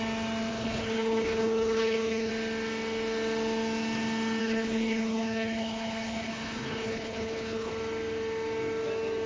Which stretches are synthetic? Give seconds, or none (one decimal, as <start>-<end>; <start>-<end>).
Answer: 0.5-2.3; 4.4-7.7

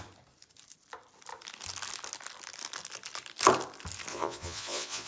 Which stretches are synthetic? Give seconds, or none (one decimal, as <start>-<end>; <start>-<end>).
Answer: 4.1-5.1